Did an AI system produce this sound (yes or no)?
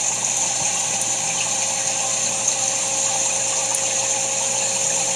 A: no